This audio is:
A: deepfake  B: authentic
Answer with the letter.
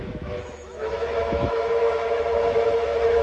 A